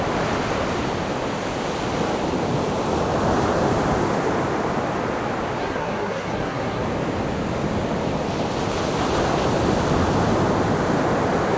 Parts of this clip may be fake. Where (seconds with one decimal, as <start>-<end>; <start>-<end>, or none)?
5.6-6.8